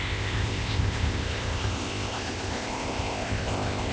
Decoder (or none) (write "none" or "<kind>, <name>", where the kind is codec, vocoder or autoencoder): codec, ZipCodec